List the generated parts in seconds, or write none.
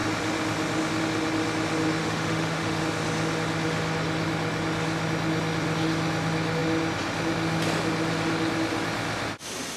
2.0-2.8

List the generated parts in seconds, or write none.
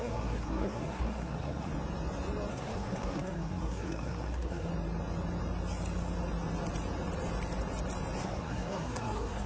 0.0-1.7; 2.5-4.7; 8.2-9.5